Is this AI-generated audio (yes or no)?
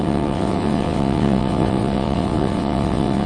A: yes